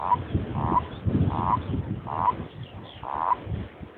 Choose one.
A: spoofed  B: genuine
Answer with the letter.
B